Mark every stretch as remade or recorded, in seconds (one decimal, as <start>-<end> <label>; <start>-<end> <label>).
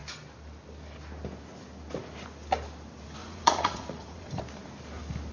0.0-3.2 recorded; 3.2-4.4 remade; 4.4-5.3 recorded